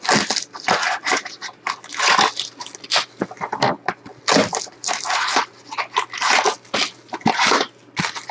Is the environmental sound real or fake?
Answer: real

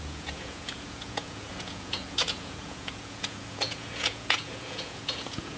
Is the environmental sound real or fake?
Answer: fake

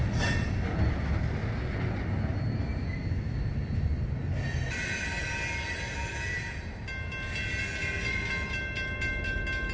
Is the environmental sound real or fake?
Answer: real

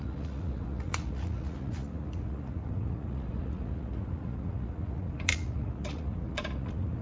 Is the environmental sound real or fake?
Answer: fake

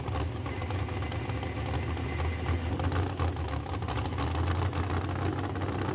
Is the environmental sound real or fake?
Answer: real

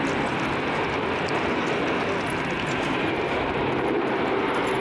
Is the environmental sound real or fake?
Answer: real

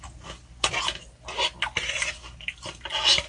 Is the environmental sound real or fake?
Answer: real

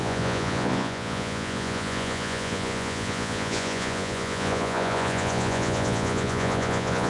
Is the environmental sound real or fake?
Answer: fake